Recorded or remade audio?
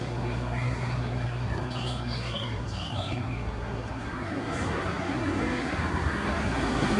remade